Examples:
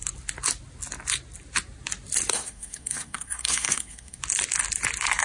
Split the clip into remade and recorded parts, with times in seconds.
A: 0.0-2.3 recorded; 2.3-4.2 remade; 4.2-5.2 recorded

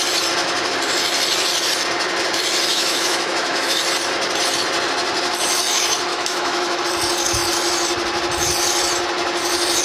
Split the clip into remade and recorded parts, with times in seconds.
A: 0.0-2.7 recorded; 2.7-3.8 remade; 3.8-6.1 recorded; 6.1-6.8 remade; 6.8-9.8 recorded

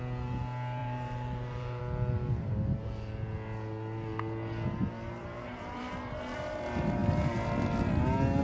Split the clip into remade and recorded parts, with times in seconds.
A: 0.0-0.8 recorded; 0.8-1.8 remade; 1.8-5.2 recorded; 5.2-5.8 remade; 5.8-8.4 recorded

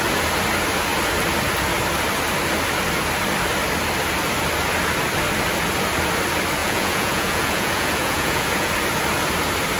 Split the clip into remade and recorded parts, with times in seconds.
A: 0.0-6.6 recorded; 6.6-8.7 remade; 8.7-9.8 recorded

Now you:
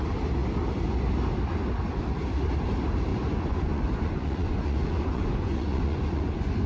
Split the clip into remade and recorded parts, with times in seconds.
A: 0.0-3.1 recorded; 3.1-6.7 remade